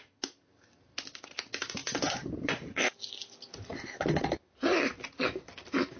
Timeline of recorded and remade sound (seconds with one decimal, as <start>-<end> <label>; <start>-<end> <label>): 0.0-6.0 recorded